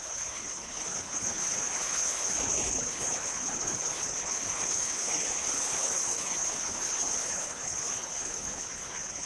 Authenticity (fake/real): fake